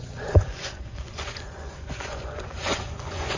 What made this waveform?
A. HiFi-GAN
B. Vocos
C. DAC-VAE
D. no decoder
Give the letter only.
B